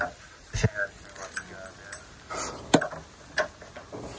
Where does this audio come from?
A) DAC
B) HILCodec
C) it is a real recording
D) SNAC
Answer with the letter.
C